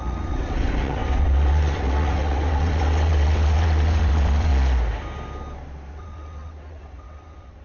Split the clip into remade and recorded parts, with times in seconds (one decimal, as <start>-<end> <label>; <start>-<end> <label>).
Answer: 0.0-4.5 remade; 4.5-5.9 recorded; 5.9-7.6 remade